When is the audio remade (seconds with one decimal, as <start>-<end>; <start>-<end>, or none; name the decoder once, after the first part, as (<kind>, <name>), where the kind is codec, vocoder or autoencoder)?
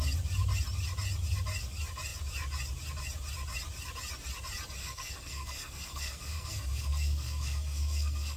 4.8-8.4 (codec, SNAC)